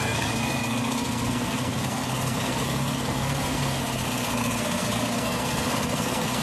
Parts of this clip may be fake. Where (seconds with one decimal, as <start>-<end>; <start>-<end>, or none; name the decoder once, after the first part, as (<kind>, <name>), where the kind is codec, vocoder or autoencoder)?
0.0-6.4 (codec, SNAC)